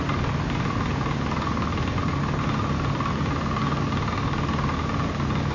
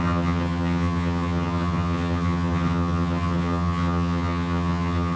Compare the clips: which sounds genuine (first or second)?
first